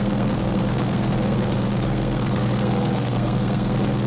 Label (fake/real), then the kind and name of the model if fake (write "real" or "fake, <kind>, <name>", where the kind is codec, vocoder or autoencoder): fake, codec, SNAC